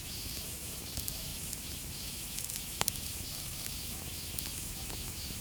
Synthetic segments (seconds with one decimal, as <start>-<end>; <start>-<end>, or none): 0.0-5.4